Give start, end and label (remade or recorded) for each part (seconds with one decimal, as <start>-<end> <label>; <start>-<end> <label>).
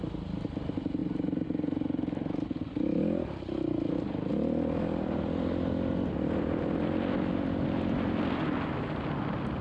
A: 0.0-9.6 recorded